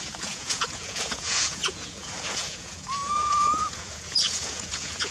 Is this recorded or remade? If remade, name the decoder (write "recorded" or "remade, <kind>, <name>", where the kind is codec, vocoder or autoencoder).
remade, vocoder, Vocos